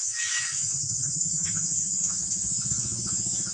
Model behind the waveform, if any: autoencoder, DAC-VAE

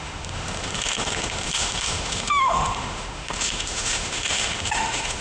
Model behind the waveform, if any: autoencoder, DAC-VAE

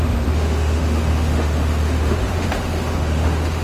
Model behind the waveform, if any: autoencoder, DAC-VAE